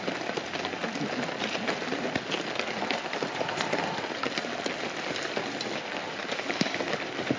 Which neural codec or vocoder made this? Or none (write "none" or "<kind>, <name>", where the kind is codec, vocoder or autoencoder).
none